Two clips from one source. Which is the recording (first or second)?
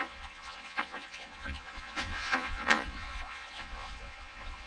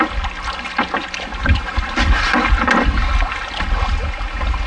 second